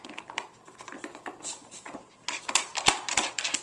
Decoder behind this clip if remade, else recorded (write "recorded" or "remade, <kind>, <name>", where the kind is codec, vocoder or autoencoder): remade, vocoder, BigVGAN v2